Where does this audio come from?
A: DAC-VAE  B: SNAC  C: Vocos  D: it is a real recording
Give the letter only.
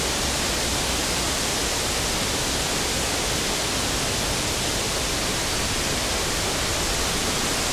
D